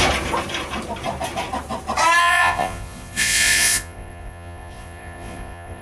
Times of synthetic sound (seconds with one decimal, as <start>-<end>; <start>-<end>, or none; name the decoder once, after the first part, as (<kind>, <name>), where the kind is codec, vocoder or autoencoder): 2.2-5.8 (vocoder, Vocos)